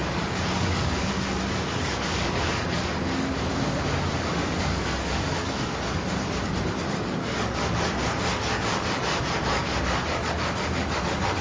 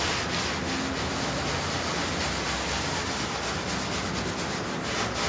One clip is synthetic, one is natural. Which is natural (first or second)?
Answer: second